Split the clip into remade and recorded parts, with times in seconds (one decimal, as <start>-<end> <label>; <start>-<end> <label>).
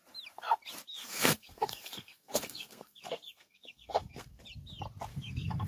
0.0-1.0 recorded; 1.0-4.4 remade; 4.4-5.1 recorded; 5.1-5.7 remade